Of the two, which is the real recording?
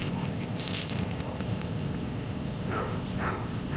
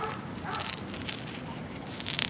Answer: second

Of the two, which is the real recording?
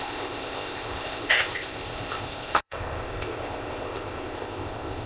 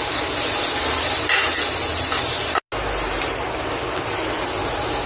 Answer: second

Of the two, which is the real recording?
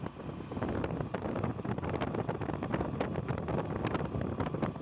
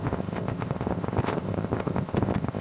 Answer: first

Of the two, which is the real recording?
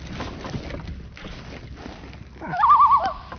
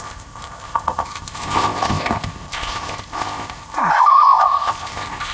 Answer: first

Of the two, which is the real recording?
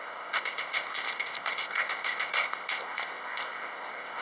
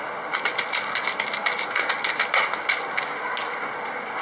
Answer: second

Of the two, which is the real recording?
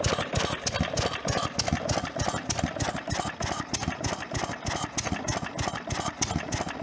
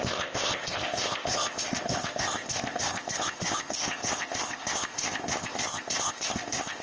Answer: first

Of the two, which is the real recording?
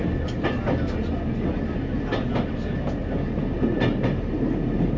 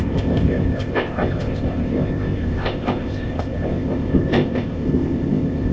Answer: first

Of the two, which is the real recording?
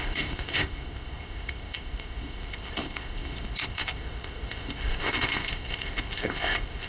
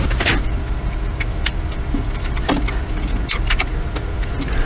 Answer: second